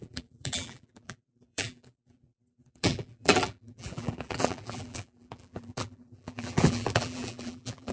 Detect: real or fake fake